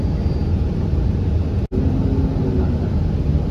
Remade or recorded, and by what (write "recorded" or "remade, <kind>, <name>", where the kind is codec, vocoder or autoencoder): recorded